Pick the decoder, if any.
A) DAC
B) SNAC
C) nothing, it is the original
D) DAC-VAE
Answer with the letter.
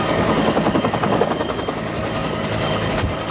A